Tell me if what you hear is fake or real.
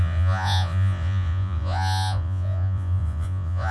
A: fake